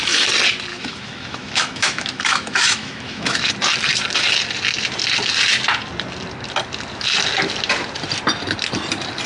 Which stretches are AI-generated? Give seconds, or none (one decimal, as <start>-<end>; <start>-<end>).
0.7-3.5